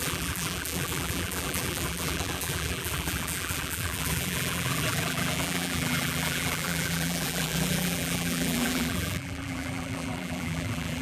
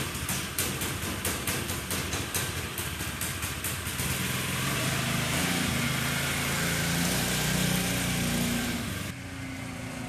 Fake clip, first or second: first